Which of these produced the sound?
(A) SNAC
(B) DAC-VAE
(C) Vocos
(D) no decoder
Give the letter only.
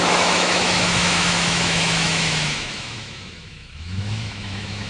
B